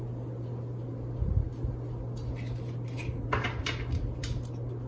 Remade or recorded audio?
recorded